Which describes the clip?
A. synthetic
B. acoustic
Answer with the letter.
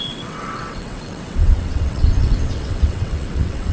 A